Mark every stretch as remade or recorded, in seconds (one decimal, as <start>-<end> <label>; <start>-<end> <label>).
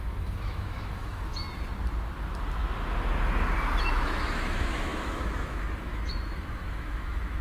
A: 0.0-1.3 remade; 1.3-3.8 recorded; 3.8-7.4 remade